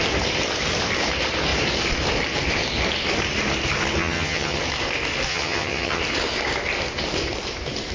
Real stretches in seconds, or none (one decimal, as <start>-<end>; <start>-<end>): 0.0-4.0; 4.6-5.3; 6.0-7.9